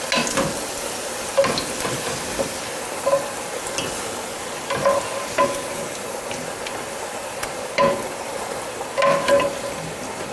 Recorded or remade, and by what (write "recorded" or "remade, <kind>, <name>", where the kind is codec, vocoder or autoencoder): recorded